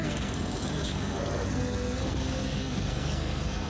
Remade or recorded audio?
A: remade